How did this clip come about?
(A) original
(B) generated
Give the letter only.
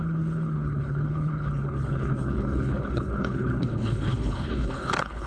B